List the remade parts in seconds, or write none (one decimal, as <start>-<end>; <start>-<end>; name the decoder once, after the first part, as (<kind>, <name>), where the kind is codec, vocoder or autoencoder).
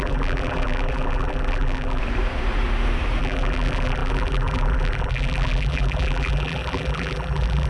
0.0-2.0 (vocoder, BigVGAN v2); 3.2-7.7